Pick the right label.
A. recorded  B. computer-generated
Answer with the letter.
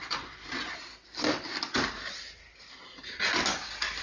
A